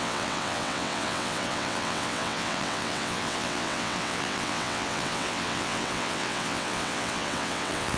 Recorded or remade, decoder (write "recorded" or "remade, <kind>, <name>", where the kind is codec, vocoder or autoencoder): remade, vocoder, WaveNeXt